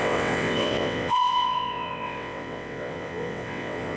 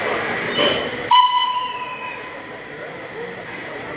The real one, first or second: second